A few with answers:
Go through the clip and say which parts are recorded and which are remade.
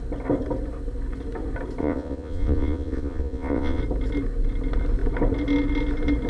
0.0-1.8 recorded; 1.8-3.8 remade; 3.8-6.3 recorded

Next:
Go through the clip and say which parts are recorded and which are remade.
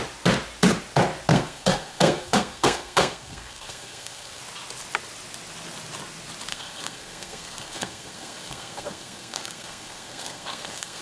0.0-1.3 recorded; 1.3-4.4 remade; 4.4-6.5 recorded; 6.5-11.0 remade